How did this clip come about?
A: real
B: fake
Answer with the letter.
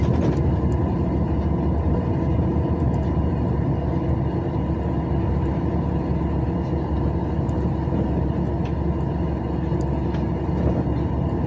A